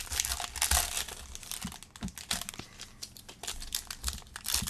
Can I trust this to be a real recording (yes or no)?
yes